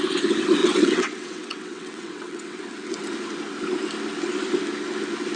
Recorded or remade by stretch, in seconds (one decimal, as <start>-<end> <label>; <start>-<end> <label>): 0.0-0.6 recorded; 0.6-2.6 remade; 2.6-5.4 recorded